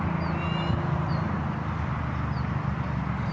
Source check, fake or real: real